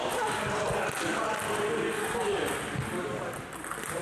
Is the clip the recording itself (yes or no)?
yes